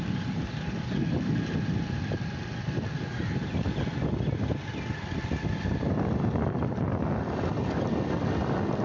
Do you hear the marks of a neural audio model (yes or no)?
no